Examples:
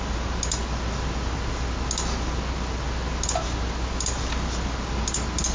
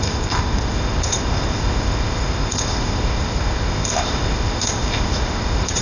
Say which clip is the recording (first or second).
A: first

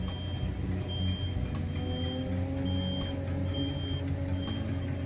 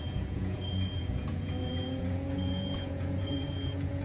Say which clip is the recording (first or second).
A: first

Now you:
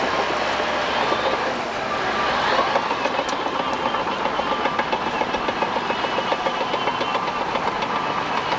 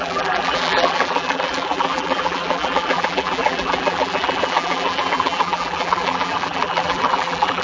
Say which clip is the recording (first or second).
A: first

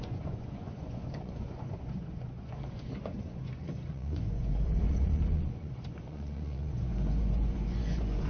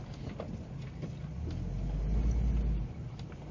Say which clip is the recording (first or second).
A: second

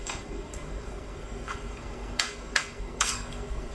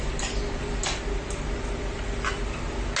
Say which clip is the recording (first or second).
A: second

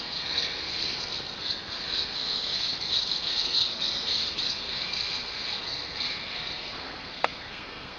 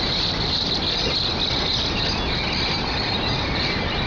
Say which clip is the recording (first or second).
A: second